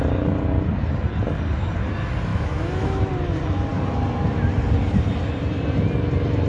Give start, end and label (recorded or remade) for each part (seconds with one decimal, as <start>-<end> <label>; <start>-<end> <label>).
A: 0.0-2.3 recorded; 2.3-3.1 remade; 3.1-6.5 recorded